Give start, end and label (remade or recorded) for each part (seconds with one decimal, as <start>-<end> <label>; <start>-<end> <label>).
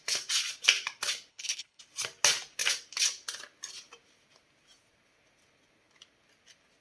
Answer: 0.0-1.3 recorded; 1.3-1.8 remade; 1.8-6.8 recorded